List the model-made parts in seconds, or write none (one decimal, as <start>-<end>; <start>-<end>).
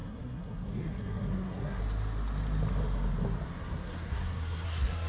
0.0-1.8; 3.5-5.1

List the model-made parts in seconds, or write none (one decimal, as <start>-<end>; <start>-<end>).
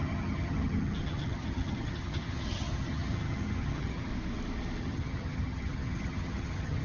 0.0-4.1; 4.8-6.8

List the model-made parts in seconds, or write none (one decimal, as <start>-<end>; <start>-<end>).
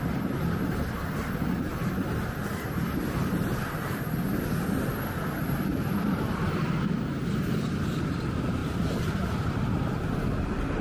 1.7-2.4; 5.7-8.0; 8.6-10.1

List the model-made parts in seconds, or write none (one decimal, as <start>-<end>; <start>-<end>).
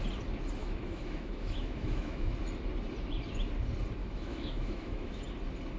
0.6-2.3; 4.0-5.2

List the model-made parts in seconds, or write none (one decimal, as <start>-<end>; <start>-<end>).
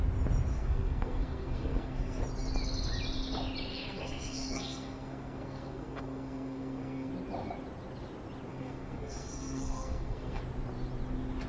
0.5-2.2; 3.7-7.1; 8.5-10.4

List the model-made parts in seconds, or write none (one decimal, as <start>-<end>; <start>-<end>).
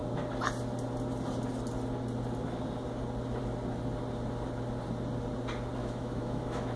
5.8-6.8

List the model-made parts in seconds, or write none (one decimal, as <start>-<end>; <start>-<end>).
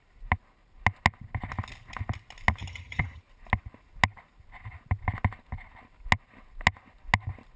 2.6-3.2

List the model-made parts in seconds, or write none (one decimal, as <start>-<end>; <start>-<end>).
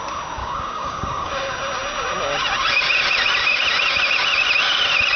0.4-1.3